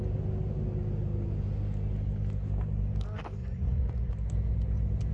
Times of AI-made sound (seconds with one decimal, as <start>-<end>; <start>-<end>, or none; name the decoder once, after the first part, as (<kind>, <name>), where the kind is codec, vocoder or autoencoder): 3.4-4.1 (vocoder, Vocos)